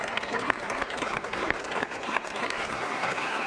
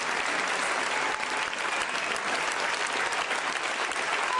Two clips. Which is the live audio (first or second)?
second